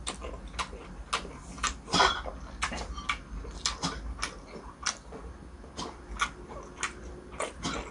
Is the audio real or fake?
real